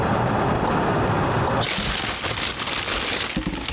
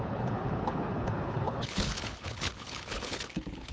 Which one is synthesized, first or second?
second